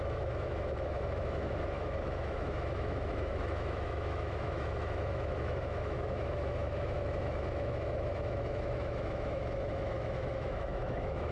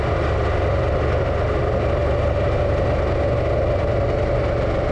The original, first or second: second